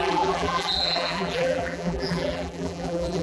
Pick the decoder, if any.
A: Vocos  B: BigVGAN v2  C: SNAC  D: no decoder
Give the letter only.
B